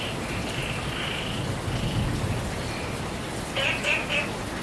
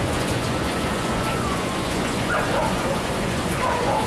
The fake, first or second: second